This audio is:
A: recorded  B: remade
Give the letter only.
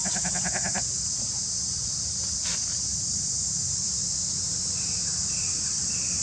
A